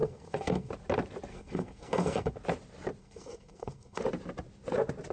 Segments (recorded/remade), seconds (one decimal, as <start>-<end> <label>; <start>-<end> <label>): 0.0-0.7 remade; 0.7-1.3 recorded; 1.3-2.3 remade; 2.3-3.0 recorded; 3.0-4.0 remade; 4.0-5.1 recorded